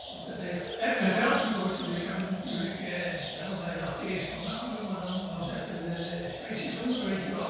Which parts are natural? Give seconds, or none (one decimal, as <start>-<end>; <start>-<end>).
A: 0.0-7.5